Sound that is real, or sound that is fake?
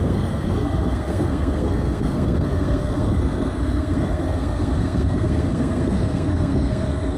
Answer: fake